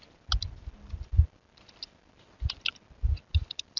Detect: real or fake real